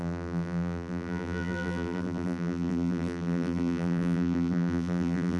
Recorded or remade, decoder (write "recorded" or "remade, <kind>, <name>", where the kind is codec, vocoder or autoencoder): remade, vocoder, BigVGAN v2